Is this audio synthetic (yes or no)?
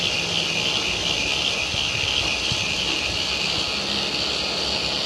no